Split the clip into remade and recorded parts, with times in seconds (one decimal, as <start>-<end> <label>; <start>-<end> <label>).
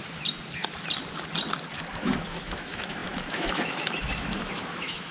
0.0-1.7 recorded; 1.7-5.1 remade